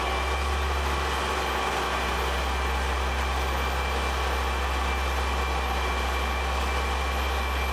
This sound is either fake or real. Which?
real